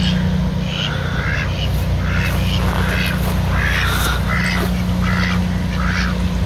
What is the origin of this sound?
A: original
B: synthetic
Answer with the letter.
A